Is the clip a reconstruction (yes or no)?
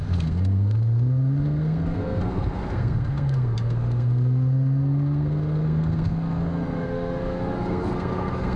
yes